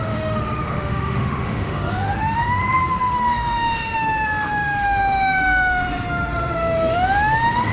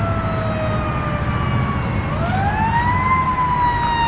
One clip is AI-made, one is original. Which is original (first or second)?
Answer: second